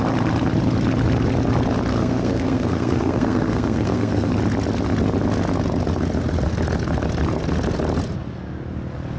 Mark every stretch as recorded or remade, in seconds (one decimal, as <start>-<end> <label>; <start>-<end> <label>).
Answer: 0.0-1.9 recorded; 1.9-4.3 remade; 4.3-9.2 recorded